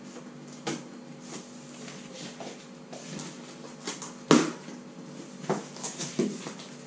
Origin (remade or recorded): recorded